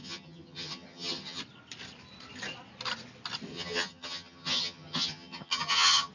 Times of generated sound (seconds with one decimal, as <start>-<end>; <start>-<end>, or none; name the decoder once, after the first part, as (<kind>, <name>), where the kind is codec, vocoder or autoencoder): 0.0-1.4 (vocoder, HiFi-GAN); 3.5-6.1